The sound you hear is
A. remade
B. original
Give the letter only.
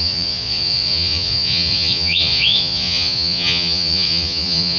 A